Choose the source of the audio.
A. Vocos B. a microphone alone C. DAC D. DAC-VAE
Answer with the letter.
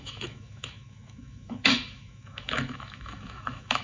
D